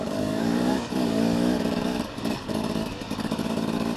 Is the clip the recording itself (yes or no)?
no